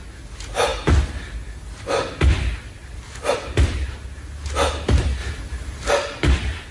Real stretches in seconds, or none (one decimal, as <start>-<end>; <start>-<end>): 0.0-6.7